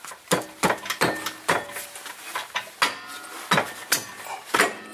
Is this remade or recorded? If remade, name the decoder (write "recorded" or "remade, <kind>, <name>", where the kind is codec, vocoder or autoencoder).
recorded